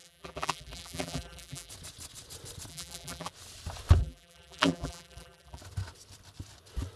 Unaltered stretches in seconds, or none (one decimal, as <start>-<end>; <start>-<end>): 1.7-2.7; 3.3-4.0; 5.6-7.0